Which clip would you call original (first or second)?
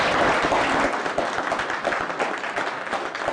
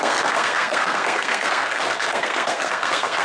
first